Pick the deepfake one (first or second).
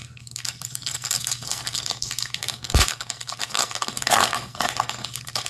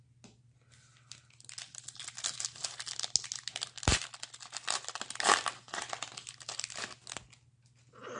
first